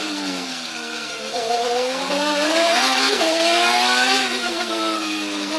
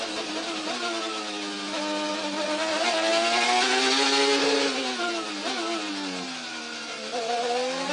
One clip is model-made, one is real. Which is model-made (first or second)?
first